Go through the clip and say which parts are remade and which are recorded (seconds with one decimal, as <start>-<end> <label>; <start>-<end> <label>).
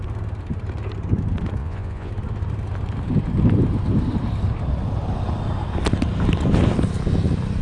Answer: 0.0-1.6 recorded; 1.6-2.1 remade; 2.1-7.6 recorded